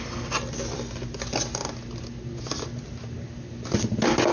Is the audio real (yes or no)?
yes